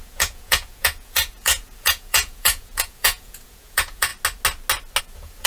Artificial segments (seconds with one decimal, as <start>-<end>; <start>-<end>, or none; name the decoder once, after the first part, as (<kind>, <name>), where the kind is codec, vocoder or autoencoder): 0.0-4.1 (vocoder, Vocos); 5.0-5.5